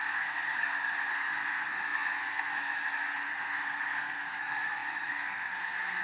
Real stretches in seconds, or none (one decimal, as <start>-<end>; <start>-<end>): none